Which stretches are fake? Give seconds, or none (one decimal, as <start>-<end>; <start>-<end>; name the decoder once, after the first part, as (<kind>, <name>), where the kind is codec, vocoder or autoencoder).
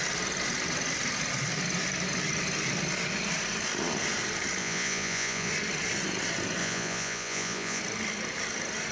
4.6-5.5 (vocoder, Vocos); 6.6-7.8